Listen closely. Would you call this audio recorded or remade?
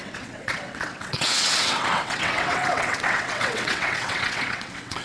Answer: remade